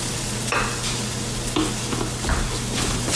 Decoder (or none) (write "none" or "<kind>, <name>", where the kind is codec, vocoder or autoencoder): none